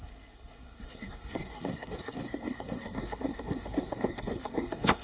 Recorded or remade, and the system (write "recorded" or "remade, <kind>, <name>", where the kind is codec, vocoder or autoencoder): remade, codec, SNAC